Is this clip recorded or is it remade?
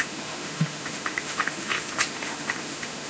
remade